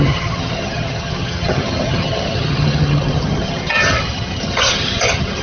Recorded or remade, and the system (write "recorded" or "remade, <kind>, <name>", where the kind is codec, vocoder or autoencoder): remade, vocoder, HiFi-GAN